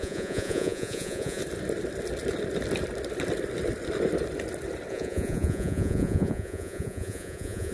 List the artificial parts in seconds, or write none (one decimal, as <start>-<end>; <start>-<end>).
0.0-1.4; 4.9-7.7